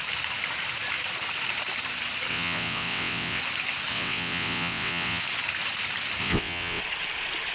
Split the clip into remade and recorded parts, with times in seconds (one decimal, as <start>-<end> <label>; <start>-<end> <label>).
0.0-2.3 recorded; 2.3-3.4 remade; 3.4-3.9 recorded; 3.9-5.2 remade; 5.2-6.2 recorded; 6.2-6.8 remade; 6.8-7.5 recorded

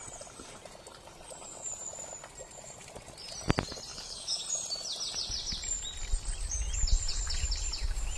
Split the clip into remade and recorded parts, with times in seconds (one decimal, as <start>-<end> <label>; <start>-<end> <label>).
0.0-3.9 recorded; 3.9-4.4 remade; 4.4-8.2 recorded